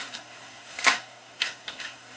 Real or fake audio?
fake